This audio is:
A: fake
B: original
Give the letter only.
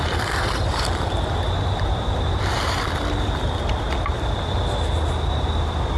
B